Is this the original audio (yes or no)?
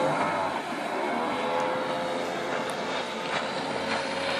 yes